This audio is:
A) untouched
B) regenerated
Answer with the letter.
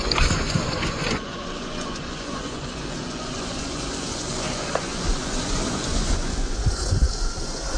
B